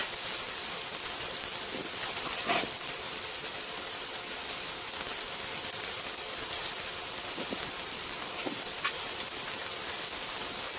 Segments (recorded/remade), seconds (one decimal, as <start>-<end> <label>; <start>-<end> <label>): 0.0-10.8 recorded

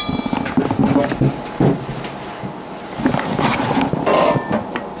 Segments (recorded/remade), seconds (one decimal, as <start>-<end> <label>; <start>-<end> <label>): 0.0-5.0 recorded

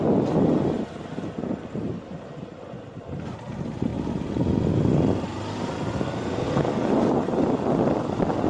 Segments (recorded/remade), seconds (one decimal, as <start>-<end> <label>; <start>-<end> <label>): 0.0-8.5 recorded

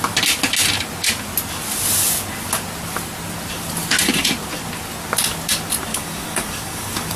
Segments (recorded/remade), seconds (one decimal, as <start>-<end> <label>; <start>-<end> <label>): 0.0-5.9 recorded; 5.9-7.2 remade

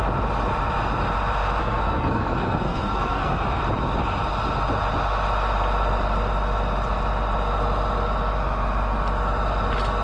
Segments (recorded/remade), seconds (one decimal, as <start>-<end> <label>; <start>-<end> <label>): 0.0-1.6 recorded; 1.6-3.6 remade; 3.6-10.0 recorded

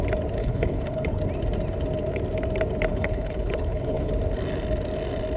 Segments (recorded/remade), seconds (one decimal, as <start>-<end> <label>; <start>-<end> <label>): 0.0-0.4 recorded; 0.4-1.2 remade; 1.2-2.9 recorded; 2.9-4.1 remade; 4.1-5.4 recorded

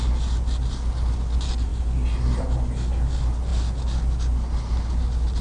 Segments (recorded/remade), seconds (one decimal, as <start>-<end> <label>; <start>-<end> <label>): 0.0-5.4 recorded

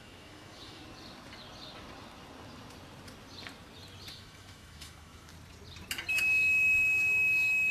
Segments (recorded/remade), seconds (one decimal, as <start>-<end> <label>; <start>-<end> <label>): 0.0-0.8 remade; 0.8-4.1 recorded; 4.1-5.3 remade; 5.3-6.2 recorded; 6.2-7.7 remade